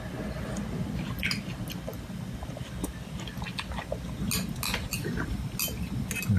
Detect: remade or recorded recorded